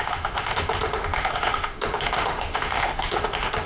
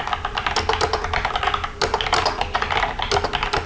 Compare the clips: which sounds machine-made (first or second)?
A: first